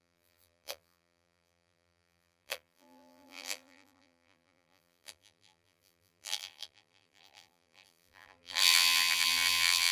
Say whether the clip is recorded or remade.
remade